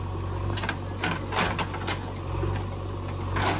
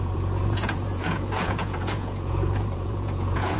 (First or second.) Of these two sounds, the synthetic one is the second